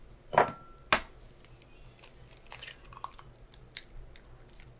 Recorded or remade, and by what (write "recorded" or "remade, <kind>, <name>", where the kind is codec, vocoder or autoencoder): recorded